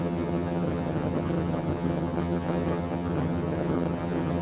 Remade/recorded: remade